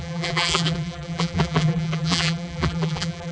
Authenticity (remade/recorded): remade